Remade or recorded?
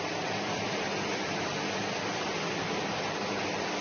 remade